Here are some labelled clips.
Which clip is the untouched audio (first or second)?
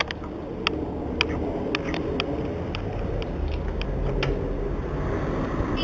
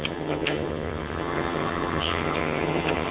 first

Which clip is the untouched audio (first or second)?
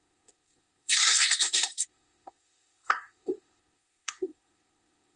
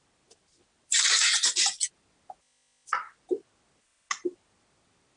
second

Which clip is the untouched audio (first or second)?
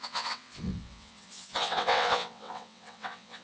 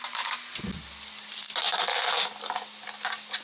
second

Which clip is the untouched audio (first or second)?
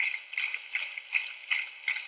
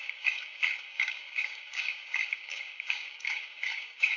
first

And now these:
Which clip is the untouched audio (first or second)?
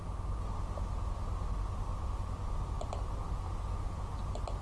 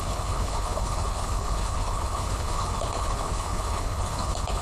first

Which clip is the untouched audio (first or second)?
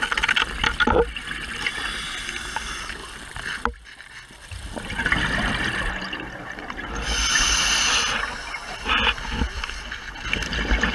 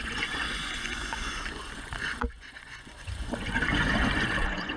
first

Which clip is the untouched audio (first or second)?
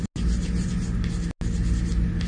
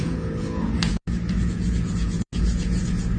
first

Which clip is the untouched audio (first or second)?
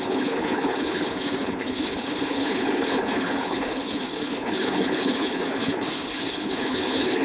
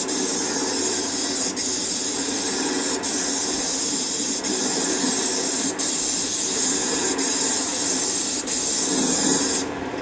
second